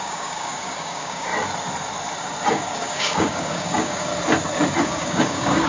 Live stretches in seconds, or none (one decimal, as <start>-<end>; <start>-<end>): 1.3-2.5; 4.1-4.8